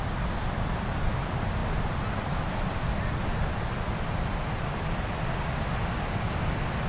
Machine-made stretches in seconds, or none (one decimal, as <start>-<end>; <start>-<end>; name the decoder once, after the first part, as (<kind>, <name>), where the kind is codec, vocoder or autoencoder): none